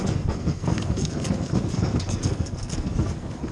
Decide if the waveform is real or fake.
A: fake